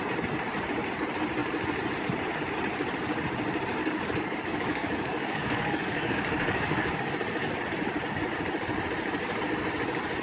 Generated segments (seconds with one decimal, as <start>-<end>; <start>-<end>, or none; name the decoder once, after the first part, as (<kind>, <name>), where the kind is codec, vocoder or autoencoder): 3.8-7.1 (codec, DAC)